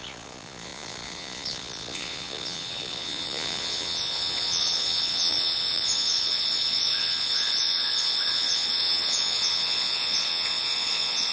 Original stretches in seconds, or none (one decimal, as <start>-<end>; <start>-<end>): none

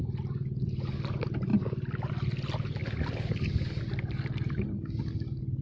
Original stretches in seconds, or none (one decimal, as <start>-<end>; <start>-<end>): 0.0-5.6

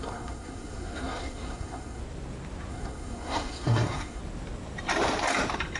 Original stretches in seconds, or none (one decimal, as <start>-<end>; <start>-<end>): 2.0-2.7; 4.2-5.8

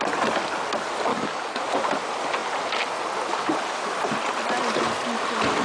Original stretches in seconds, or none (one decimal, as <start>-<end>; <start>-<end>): 0.0-1.1; 1.6-5.6

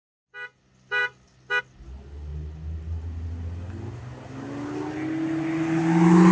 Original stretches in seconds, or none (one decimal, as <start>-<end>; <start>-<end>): 0.0-6.3

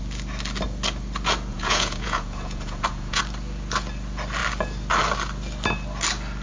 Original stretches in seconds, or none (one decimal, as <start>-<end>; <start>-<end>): 0.0-1.5; 3.2-6.4